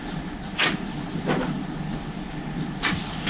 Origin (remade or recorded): recorded